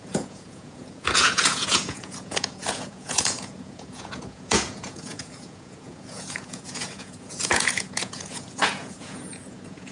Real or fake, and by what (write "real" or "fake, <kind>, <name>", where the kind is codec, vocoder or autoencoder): fake, vocoder, Vocos